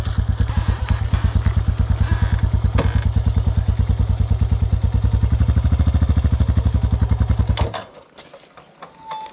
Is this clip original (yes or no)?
yes